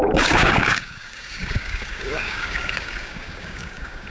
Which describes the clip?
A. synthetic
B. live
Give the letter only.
A